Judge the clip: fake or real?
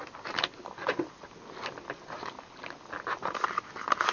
real